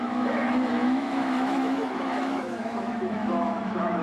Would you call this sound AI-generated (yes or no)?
yes